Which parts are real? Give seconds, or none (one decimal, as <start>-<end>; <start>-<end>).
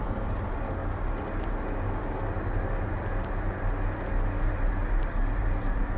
0.8-4.4